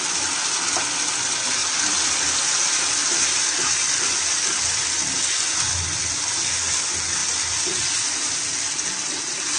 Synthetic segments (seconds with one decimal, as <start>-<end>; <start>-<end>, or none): none